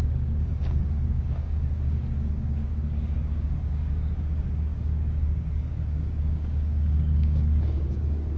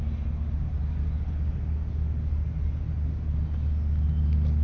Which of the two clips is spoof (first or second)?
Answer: first